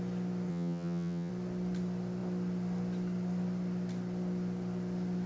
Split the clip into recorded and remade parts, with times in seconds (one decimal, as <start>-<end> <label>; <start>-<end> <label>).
0.0-0.5 recorded; 0.5-1.3 remade; 1.3-5.3 recorded